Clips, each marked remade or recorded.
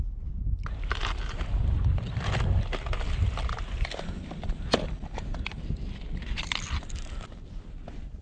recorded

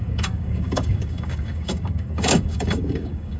remade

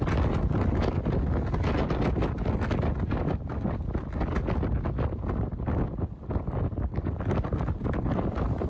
recorded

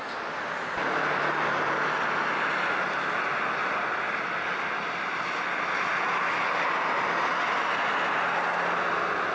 recorded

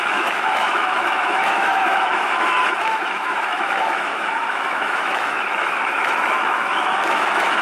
remade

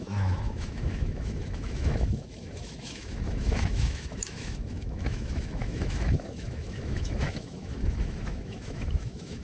remade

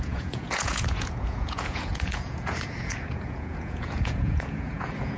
remade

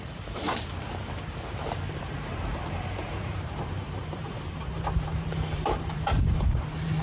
remade